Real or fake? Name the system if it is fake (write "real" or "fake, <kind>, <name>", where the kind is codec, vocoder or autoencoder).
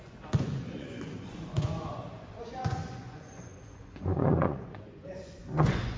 fake, vocoder, Vocos